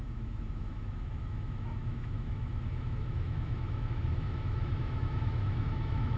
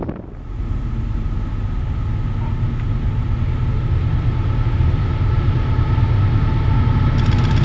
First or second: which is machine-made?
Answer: first